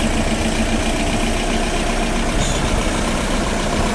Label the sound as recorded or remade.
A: recorded